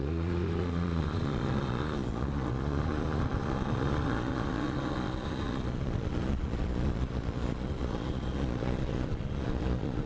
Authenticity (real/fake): fake